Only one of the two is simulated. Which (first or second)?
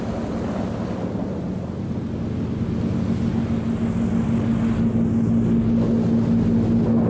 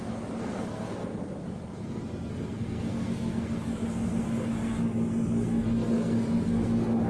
second